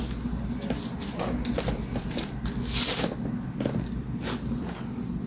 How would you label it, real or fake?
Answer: real